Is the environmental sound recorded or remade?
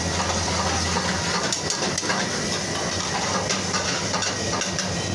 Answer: recorded